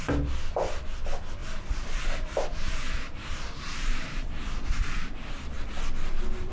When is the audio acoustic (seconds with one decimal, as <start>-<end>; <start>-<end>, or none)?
0.0-1.4; 5.3-6.5